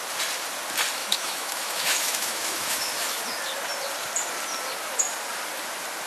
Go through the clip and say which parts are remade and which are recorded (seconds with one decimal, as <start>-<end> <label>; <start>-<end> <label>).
0.0-1.0 recorded; 1.0-3.2 remade; 3.2-6.1 recorded

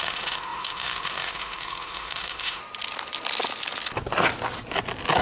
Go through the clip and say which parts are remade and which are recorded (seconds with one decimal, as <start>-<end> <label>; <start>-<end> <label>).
0.0-2.6 remade; 2.6-5.2 recorded

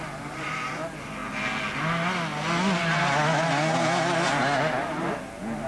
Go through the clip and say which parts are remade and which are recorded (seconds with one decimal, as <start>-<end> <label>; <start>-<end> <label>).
0.0-5.7 recorded